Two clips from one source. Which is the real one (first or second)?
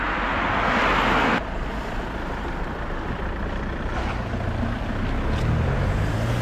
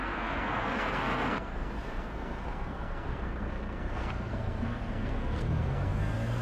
first